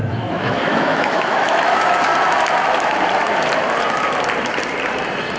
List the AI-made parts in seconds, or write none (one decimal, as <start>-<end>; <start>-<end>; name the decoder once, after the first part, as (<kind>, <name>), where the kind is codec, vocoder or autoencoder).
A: 0.0-2.1 (autoencoder, DAC-VAE)